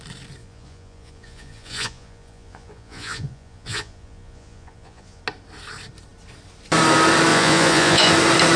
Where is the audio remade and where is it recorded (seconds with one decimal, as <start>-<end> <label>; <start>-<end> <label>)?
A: 0.0-0.4 recorded; 0.4-5.2 remade; 5.2-7.3 recorded; 7.3-8.1 remade; 8.1-8.6 recorded